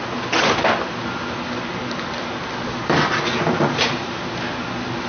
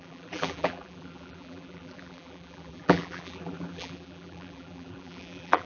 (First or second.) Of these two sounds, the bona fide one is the first